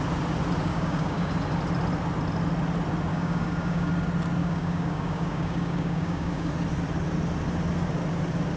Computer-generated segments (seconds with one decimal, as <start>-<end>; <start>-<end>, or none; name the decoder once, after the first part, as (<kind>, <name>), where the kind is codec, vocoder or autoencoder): 0.6-1.3 (codec, DAC); 3.1-3.9; 4.4-6.5